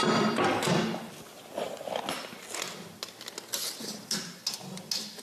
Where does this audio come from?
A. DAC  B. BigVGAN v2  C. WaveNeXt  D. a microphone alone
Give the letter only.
D